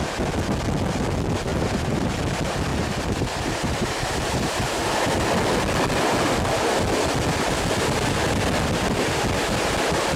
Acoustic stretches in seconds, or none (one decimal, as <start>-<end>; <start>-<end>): 0.0-1.5; 2.1-2.7; 4.6-10.2